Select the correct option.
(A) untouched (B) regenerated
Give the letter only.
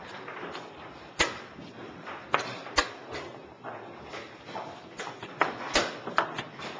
A